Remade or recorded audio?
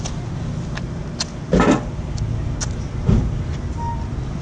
recorded